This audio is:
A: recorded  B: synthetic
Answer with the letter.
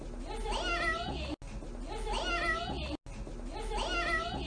A